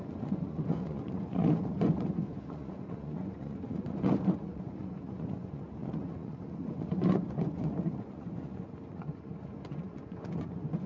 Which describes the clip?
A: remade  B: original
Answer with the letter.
A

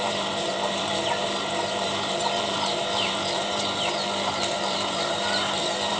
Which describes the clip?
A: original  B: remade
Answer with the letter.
B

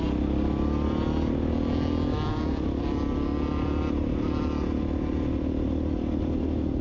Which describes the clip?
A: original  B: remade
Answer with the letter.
A